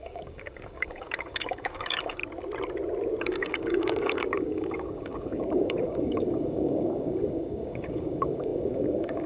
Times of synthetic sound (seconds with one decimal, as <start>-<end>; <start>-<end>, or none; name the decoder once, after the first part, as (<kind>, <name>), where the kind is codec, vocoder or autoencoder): 0.0-2.2 (codec, DAC); 3.2-9.3